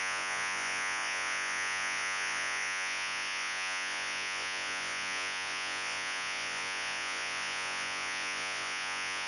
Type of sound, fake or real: fake